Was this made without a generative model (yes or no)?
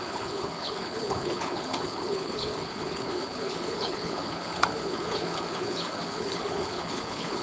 no